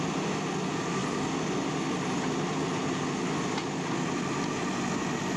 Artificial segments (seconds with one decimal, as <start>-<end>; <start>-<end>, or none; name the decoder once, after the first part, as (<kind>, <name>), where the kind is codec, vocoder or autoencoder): none